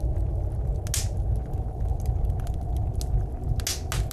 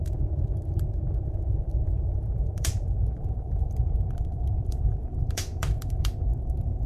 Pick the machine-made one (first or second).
second